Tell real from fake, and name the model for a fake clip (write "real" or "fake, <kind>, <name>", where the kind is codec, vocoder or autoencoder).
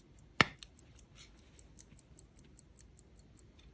real